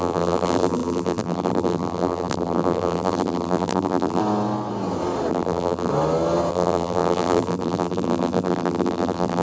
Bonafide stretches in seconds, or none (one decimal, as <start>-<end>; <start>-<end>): 4.2-5.3; 5.9-6.5